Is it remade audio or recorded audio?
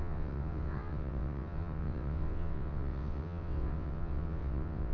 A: remade